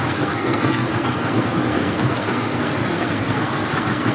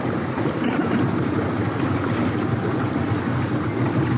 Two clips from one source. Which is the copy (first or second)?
first